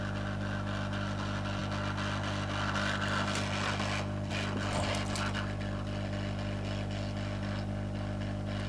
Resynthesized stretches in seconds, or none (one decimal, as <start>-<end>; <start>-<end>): none